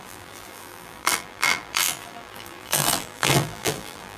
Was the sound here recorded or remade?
remade